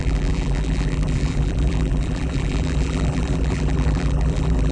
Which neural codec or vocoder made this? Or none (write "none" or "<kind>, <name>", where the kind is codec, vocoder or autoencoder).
vocoder, BigVGAN v2